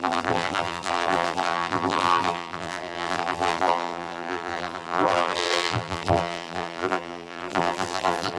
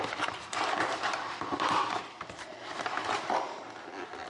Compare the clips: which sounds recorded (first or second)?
second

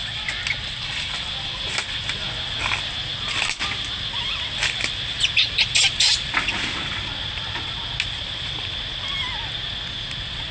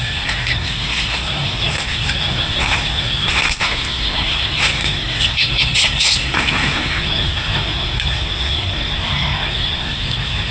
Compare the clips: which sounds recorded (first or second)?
first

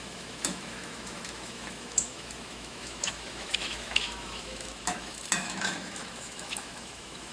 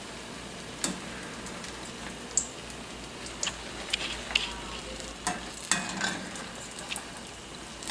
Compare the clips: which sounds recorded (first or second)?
second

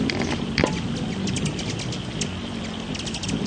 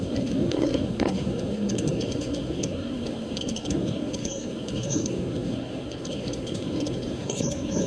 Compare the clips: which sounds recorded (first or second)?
first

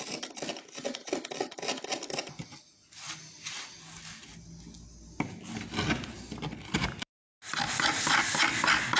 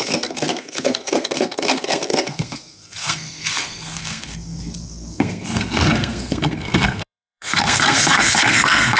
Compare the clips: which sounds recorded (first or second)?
first